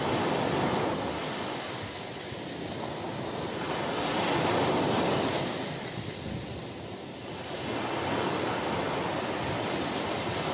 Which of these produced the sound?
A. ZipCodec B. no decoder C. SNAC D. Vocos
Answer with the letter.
B